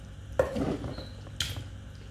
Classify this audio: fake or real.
real